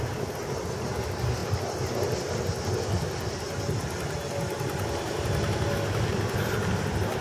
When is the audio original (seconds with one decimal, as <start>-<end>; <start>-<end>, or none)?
0.0-7.2

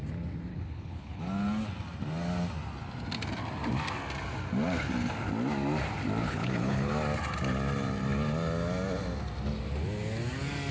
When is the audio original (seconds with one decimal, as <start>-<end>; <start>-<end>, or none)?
0.0-0.5; 1.2-6.2; 6.9-10.7

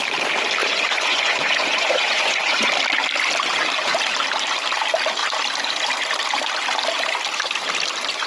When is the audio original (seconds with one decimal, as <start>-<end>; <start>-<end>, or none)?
0.0-0.6; 2.7-8.3

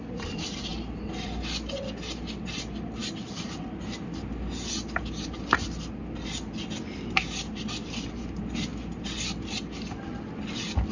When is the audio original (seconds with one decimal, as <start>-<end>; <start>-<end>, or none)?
0.0-10.9

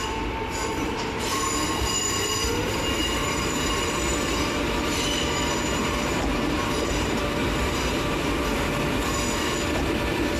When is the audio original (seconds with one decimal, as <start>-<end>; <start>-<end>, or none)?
0.0-0.6; 1.1-3.0; 8.1-10.4

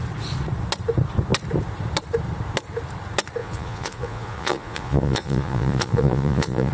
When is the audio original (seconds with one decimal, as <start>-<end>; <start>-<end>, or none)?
0.0-3.4